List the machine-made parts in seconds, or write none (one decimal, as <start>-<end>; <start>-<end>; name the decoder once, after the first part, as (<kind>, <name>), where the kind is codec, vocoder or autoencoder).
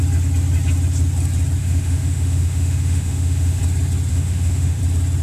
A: 1.6-3.6 (autoencoder, DAC-VAE); 4.1-4.8